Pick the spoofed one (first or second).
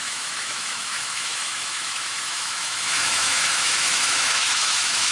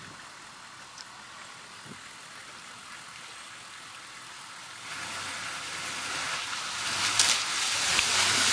first